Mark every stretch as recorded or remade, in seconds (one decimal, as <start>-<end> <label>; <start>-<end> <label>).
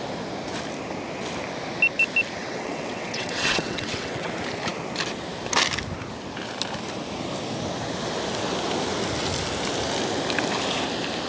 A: 0.0-2.4 recorded; 2.4-4.3 remade; 4.3-11.3 recorded